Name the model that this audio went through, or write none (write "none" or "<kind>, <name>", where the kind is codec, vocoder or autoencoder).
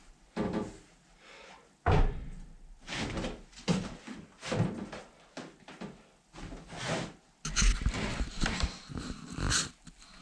none